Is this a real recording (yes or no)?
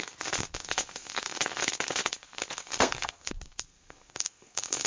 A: no